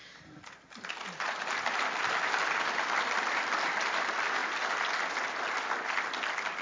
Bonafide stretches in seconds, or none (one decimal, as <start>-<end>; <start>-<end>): 0.0-2.6; 4.4-5.6